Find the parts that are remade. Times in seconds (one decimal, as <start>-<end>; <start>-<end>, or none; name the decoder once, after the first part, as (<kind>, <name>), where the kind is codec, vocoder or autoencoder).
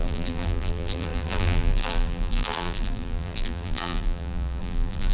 0.0-5.1 (vocoder, BigVGAN v2)